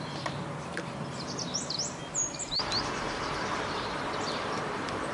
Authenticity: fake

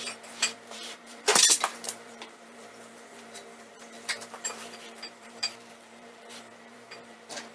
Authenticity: fake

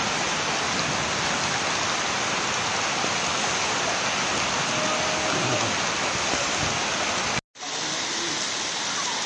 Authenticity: real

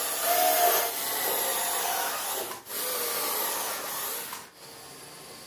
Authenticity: real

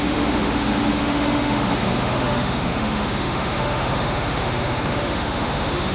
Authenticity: fake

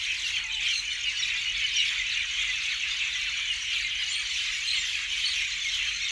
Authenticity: real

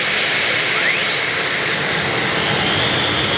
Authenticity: real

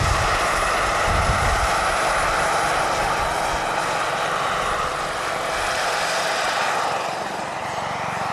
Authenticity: real